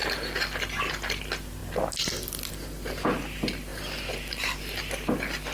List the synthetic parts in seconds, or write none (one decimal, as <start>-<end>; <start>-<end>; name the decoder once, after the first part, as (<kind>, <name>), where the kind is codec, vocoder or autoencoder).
3.7-4.9 (vocoder, BigVGAN v2)